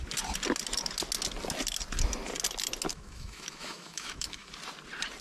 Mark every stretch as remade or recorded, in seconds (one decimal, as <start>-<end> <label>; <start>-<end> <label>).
0.0-2.9 recorded; 2.9-4.5 remade; 4.5-5.2 recorded